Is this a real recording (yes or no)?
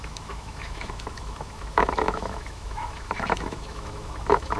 no